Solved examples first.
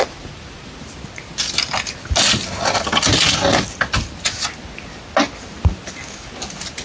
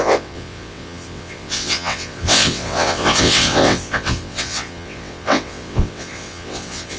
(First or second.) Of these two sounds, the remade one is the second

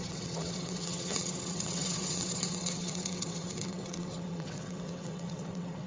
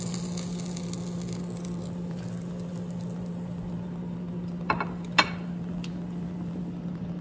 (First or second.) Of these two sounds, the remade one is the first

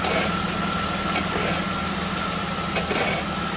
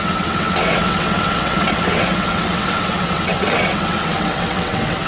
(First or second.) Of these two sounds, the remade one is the second